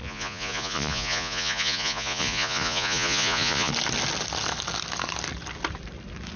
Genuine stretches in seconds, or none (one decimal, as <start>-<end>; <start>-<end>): 3.7-6.4